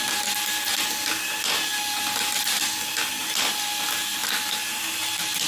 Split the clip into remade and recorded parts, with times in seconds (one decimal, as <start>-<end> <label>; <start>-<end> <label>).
0.0-5.5 recorded